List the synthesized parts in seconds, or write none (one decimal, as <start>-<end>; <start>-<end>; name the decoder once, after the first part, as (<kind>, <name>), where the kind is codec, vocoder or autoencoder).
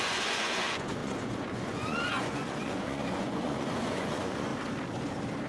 0.0-4.5 (vocoder, Vocos)